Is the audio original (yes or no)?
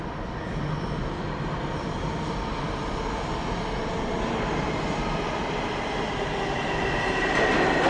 yes